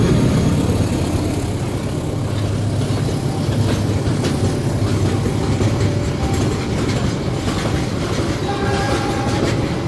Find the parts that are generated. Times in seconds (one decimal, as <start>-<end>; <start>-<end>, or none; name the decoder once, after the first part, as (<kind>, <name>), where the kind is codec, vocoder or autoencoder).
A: none